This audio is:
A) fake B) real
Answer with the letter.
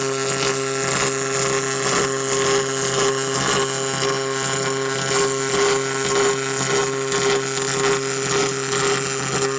B